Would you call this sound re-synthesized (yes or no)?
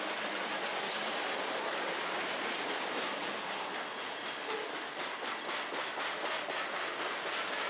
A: no